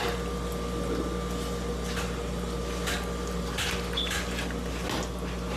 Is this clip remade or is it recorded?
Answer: recorded